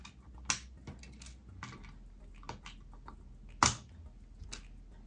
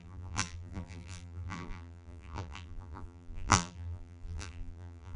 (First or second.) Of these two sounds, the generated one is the second